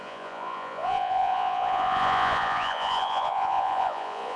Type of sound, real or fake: fake